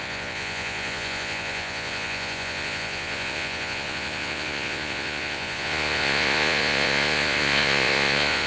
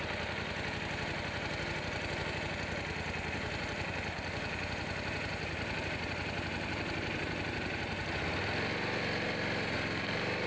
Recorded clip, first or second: second